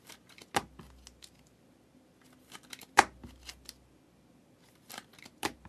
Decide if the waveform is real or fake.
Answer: real